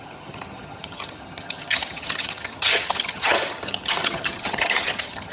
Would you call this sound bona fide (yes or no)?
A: no